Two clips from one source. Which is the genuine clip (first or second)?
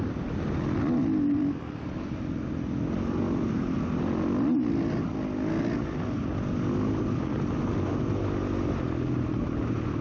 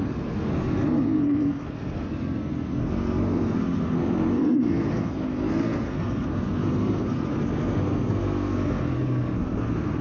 first